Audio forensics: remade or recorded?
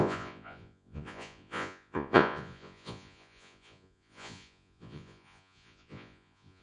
remade